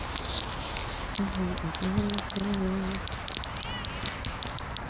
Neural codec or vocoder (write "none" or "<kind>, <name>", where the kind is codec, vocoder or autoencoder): none